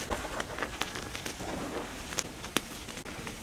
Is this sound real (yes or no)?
yes